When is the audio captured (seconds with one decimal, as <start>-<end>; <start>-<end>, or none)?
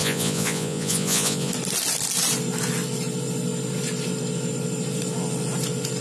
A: 1.5-6.0